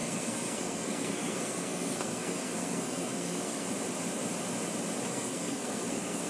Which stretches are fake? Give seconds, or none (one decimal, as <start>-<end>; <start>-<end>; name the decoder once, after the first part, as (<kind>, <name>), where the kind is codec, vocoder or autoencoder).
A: 0.0-3.7 (codec, SNAC); 5.1-6.3